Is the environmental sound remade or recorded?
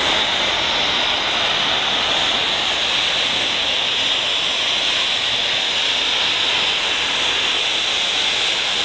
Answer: recorded